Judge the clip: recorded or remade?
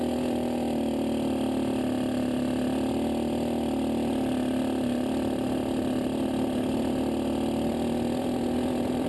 recorded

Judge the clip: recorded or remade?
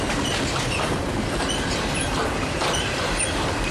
remade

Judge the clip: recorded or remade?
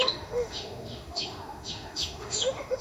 remade